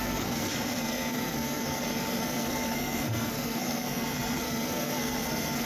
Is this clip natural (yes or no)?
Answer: no